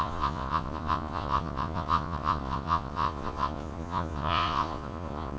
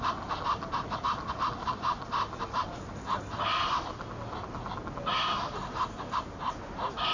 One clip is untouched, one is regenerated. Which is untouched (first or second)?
second